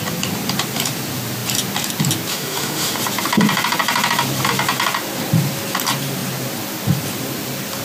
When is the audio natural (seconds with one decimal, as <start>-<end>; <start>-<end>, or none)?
0.0-2.3; 3.0-7.8